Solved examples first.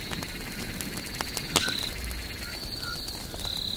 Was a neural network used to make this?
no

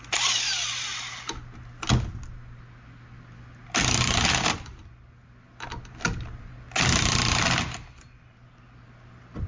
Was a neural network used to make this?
no